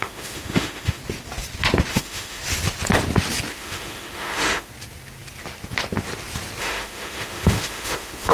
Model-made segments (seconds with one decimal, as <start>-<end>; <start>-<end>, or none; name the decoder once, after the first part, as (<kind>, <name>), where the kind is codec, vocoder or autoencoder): 0.0-1.0 (autoencoder, DAC-VAE); 1.9-2.4; 3.5-4.7; 6.6-8.3